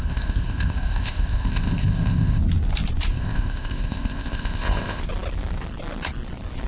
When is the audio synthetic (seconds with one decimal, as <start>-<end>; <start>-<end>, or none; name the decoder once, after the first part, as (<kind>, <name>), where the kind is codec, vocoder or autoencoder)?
0.0-2.4 (codec, ZipCodec); 3.1-5.0

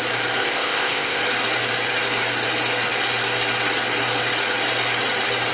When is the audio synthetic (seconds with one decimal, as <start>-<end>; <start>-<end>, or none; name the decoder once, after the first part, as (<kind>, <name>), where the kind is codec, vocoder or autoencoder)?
0.4-1.2 (codec, ZipCodec)